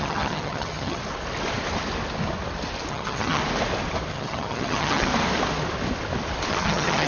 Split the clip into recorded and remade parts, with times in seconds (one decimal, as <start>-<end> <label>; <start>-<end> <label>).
0.0-1.0 remade; 1.0-2.9 recorded; 2.9-3.4 remade; 3.4-4.1 recorded; 4.1-5.1 remade; 5.1-6.5 recorded; 6.5-7.1 remade